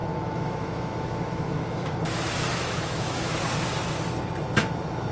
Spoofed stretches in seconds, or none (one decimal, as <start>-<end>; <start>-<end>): 0.0-2.0; 2.5-3.4